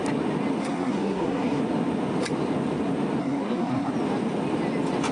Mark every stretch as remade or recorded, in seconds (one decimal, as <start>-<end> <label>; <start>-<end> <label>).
0.0-0.6 recorded; 0.6-1.6 remade; 1.6-3.2 recorded; 3.2-3.9 remade; 3.9-5.1 recorded